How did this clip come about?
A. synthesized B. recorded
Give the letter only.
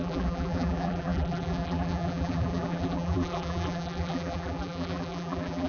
A